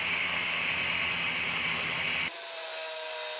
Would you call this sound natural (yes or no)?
yes